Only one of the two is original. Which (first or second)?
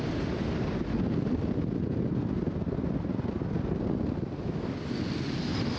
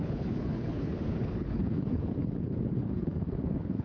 first